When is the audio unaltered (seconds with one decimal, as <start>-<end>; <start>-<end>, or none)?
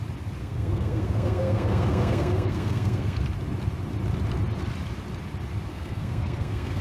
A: 0.0-0.4; 3.2-5.7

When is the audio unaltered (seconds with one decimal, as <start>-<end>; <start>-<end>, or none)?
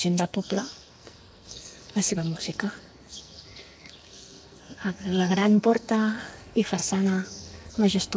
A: none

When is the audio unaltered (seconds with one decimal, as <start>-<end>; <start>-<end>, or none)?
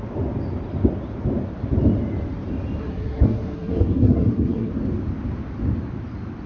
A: 0.0-2.8; 4.7-6.5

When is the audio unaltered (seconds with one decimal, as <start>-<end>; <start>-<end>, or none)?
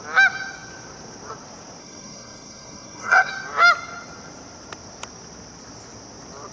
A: 0.0-1.8; 3.3-6.5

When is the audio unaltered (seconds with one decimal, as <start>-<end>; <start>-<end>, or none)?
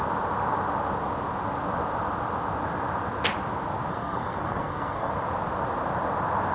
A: 0.0-3.9; 5.1-6.5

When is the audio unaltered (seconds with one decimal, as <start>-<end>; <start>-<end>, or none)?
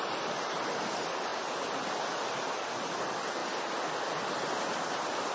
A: 0.0-5.3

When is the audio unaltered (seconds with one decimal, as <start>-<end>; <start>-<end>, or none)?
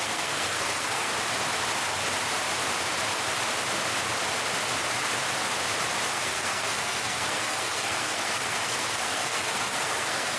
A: 1.1-6.1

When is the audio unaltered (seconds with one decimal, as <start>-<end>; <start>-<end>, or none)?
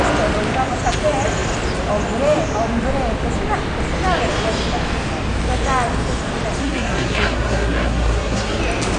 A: 0.0-6.6; 8.6-9.0